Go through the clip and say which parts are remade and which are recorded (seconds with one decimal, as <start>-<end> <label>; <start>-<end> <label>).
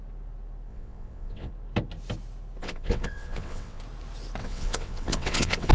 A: 0.0-0.7 recorded; 0.7-1.5 remade; 1.5-2.6 recorded; 2.6-3.8 remade; 3.8-4.4 recorded; 4.4-5.7 remade